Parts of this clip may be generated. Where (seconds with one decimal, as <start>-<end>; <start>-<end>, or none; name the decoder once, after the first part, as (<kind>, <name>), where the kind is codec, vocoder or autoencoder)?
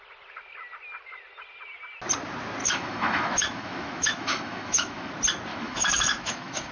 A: 2.6-5.1 (autoencoder, DAC-VAE); 5.5-6.7